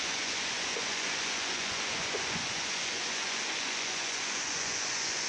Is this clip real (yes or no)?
no